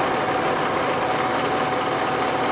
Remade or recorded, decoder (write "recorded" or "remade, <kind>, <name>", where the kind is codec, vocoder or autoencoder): recorded